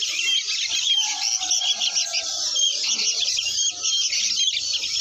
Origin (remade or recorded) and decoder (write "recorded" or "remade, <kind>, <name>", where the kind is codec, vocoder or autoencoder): recorded